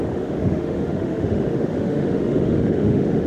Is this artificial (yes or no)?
yes